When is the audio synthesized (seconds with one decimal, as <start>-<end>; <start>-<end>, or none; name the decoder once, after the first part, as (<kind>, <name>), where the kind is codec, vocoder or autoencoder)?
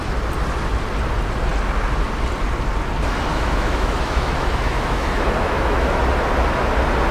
3.3-6.0 (autoencoder, DAC-VAE)